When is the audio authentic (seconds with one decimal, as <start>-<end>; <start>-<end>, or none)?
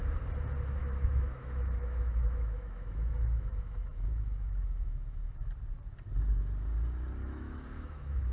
0.0-0.8; 5.5-7.2